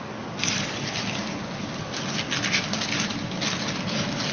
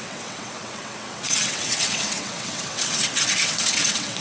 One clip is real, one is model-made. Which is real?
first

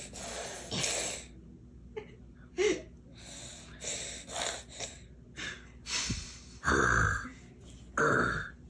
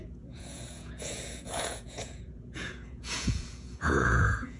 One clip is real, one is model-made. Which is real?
first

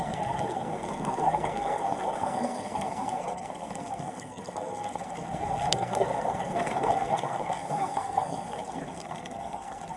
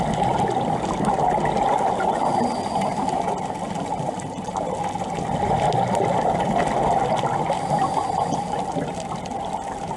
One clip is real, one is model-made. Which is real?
second